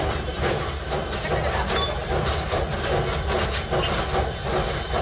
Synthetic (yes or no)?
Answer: no